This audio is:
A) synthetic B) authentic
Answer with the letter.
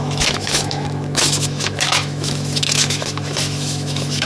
A